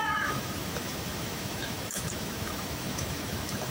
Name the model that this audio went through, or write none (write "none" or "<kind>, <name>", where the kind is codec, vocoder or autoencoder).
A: autoencoder, DAC-VAE